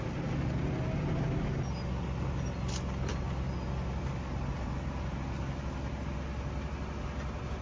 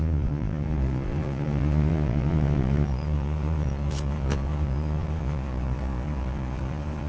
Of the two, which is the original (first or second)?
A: first